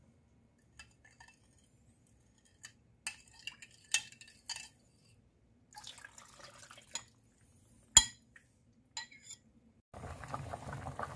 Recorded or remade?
recorded